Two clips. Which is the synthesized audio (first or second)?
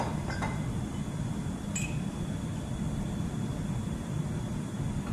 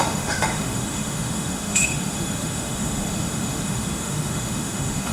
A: second